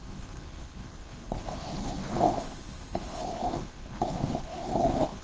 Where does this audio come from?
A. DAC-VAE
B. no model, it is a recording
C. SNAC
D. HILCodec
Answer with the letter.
D